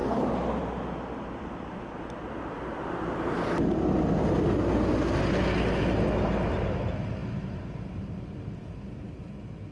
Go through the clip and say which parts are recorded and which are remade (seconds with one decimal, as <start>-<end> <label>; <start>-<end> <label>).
0.0-9.7 recorded